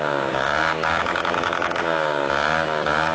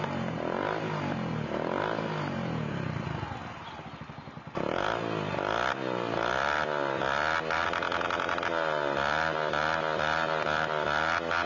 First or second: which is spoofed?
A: first